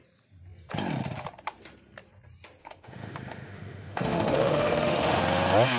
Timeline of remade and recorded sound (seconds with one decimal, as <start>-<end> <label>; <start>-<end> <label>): 0.0-2.6 recorded; 2.6-5.2 remade; 5.2-5.8 recorded